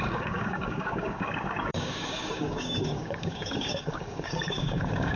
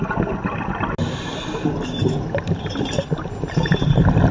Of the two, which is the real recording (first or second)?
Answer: second